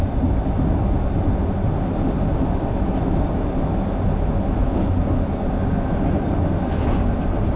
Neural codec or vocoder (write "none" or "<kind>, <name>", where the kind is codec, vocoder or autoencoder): none